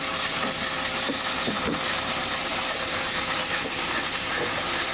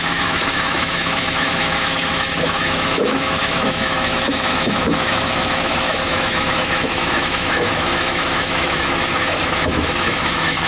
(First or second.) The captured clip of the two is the first